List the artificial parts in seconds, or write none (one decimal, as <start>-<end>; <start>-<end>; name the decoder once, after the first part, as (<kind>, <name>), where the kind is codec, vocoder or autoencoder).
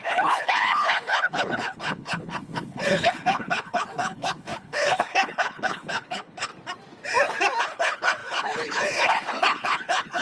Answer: 0.0-6.5 (codec, HILCodec); 7.6-10.2